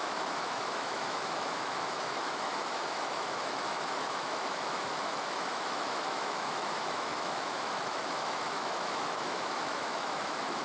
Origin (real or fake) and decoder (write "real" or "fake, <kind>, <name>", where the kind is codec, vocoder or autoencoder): fake, autoencoder, DAC-VAE